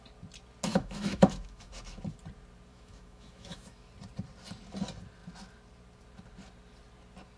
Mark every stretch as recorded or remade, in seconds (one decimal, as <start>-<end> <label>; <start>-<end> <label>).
0.0-0.7 recorded; 0.7-1.7 remade; 1.7-2.7 recorded; 2.7-3.9 remade; 3.9-7.4 recorded